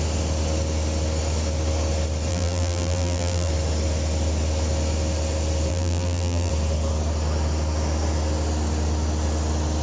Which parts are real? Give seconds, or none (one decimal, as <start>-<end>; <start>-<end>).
0.0-2.3; 3.5-5.7; 6.5-9.8